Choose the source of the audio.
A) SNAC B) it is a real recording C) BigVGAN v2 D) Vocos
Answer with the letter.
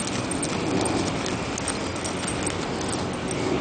B